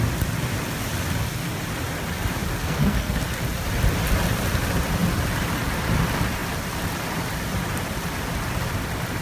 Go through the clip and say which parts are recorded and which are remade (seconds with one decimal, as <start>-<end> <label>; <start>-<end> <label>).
0.0-2.6 recorded; 2.6-3.2 remade; 3.2-9.2 recorded